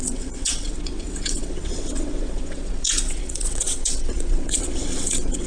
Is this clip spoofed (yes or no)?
yes